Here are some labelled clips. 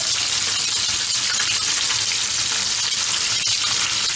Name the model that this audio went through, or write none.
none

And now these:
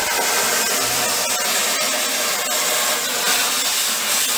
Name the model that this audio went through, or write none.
none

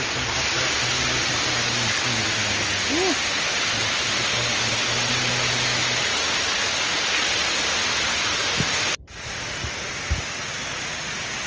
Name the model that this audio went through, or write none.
none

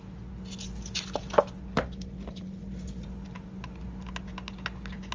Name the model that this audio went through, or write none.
none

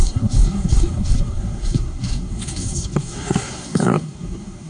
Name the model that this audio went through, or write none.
codec, SNAC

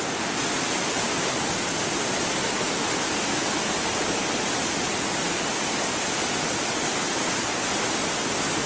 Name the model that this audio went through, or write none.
none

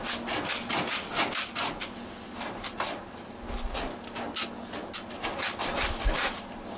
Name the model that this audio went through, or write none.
none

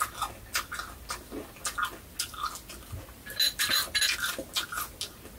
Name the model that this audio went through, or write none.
none